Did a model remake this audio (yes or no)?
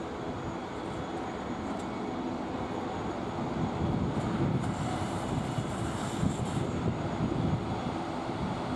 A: no